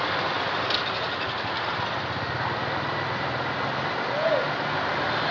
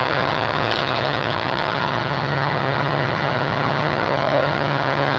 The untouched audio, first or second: first